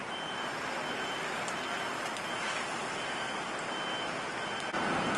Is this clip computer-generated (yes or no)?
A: no